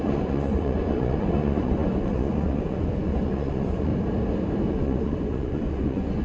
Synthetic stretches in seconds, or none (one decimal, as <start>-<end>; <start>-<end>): 0.0-3.9; 4.7-6.2